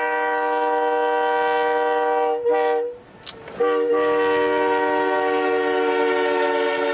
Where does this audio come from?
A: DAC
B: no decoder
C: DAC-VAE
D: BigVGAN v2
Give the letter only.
B